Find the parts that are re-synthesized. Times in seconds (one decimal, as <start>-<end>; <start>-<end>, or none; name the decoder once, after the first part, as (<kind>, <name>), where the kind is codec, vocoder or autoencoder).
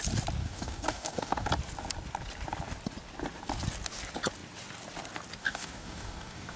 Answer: 0.4-1.5 (codec, DAC); 5.4-6.6